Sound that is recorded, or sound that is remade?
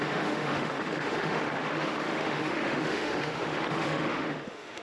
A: remade